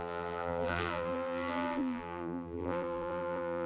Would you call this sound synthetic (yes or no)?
yes